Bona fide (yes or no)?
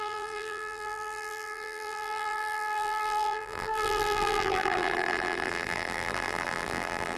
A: no